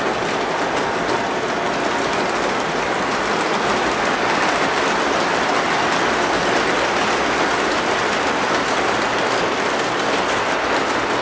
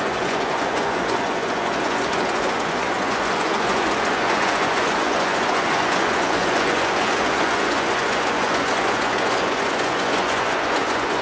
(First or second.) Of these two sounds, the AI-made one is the second